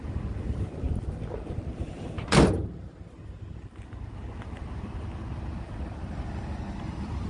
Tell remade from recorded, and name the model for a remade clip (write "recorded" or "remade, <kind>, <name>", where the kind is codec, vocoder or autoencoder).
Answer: recorded